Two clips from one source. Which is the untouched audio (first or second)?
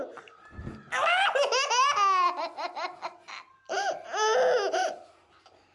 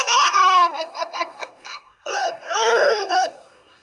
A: first